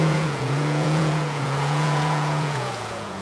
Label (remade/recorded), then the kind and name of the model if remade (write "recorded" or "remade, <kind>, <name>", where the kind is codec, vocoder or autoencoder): remade, vocoder, Vocos